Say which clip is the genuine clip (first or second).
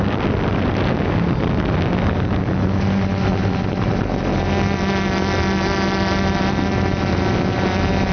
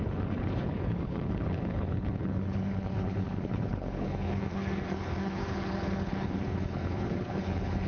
first